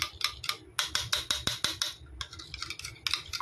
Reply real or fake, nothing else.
real